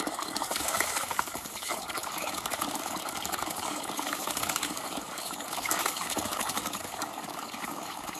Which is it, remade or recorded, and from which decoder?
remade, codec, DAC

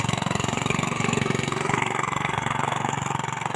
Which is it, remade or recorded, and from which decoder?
remade, codec, SNAC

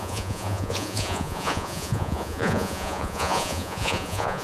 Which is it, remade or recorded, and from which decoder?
remade, vocoder, Vocos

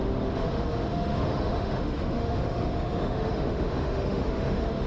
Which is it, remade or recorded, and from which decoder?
remade, autoencoder, DAC-VAE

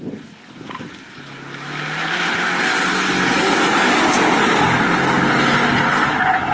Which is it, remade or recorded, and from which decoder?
recorded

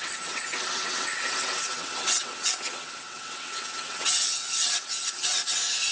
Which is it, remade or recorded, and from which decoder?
remade, vocoder, WaveNeXt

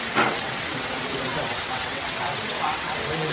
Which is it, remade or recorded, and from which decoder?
remade, vocoder, WaveNeXt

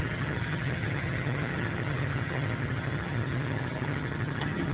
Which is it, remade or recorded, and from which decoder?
remade, vocoder, HiFi-GAN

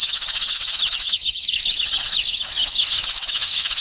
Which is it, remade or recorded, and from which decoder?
remade, autoencoder, DAC-VAE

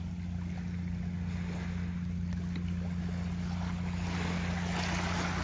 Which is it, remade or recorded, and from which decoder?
recorded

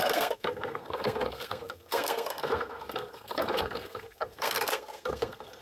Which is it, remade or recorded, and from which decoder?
remade, codec, SNAC